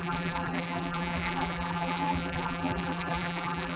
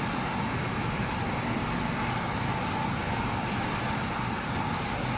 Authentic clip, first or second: second